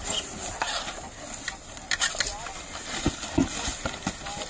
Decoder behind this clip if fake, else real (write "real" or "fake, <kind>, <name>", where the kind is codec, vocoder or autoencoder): real